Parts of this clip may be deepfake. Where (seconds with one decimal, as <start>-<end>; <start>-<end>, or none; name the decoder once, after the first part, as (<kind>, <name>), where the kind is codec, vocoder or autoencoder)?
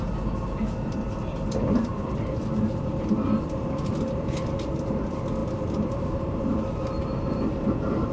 none